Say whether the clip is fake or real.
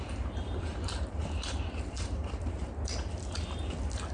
fake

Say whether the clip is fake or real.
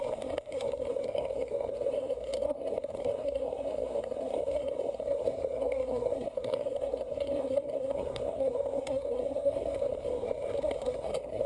fake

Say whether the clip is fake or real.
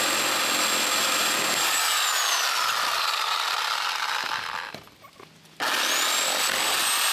real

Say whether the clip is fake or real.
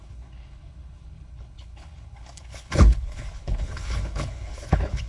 fake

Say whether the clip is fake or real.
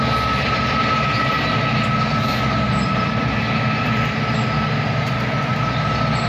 real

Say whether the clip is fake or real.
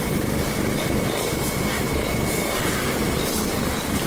real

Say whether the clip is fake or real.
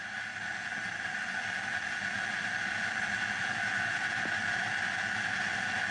real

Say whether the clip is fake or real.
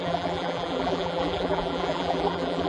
fake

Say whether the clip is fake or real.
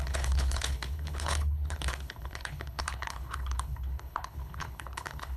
fake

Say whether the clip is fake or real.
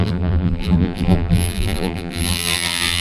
fake